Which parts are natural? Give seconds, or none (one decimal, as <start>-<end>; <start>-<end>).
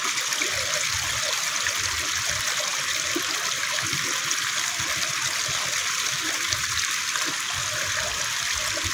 0.0-5.8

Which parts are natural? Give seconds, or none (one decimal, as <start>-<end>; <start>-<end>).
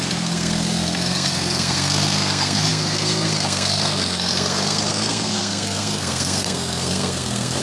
none